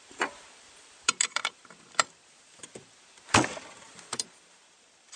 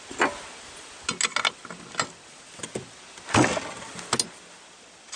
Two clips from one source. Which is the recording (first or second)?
second